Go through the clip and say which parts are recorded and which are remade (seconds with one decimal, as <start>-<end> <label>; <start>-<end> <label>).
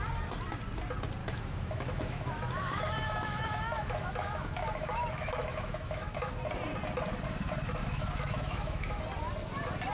0.0-1.2 recorded; 1.2-6.3 remade; 6.3-7.8 recorded; 7.8-9.0 remade; 9.0-9.9 recorded